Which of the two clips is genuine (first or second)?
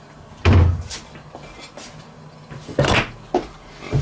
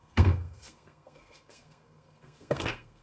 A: first